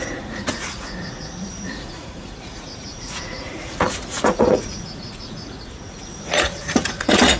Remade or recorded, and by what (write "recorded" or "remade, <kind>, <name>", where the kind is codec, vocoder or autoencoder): remade, vocoder, Vocos